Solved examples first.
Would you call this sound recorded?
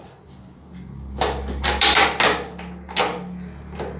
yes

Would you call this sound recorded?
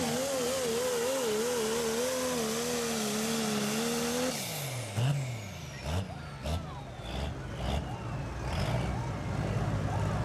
yes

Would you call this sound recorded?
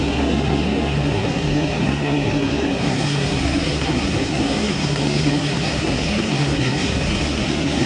no